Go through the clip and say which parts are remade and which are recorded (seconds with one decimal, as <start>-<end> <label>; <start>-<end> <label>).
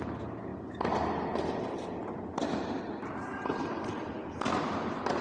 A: 0.0-5.2 recorded